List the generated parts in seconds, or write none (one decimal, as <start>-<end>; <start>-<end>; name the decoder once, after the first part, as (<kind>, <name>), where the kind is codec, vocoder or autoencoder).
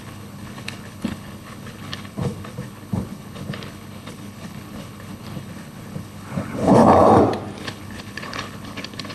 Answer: 0.0-6.8 (codec, HILCodec); 7.6-9.1